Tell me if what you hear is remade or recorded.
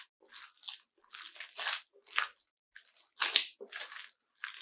recorded